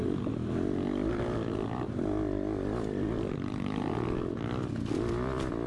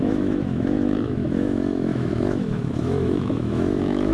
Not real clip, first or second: second